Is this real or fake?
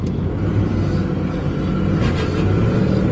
real